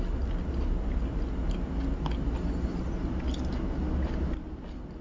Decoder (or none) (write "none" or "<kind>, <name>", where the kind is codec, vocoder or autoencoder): none